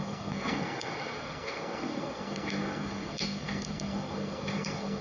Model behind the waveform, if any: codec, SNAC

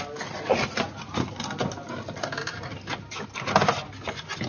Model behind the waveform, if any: none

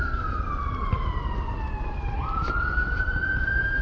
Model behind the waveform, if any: none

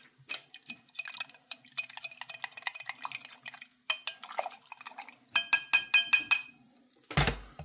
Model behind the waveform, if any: none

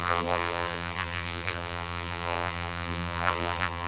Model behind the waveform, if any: vocoder, BigVGAN v2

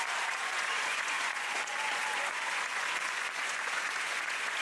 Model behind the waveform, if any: vocoder, Vocos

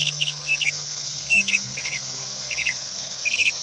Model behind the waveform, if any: codec, SNAC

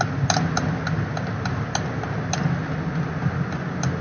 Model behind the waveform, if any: none